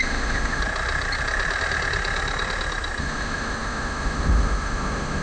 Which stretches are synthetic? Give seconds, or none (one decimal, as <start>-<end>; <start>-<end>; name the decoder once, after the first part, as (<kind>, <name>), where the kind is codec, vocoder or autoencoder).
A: 0.0-0.6 (autoencoder, DAC-VAE); 3.0-5.2